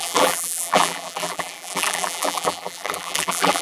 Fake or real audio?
fake